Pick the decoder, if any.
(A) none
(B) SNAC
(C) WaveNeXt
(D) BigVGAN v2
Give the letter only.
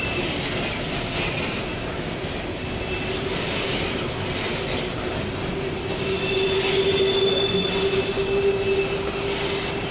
A